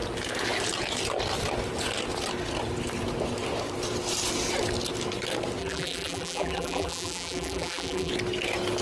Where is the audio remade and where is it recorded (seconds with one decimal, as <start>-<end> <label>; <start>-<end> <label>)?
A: 0.0-5.6 recorded; 5.6-8.1 remade; 8.1-8.8 recorded